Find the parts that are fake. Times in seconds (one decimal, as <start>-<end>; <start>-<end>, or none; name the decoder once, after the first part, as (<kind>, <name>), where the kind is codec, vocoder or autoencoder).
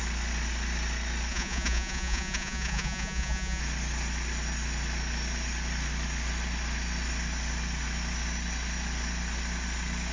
1.3-3.6 (vocoder, Vocos)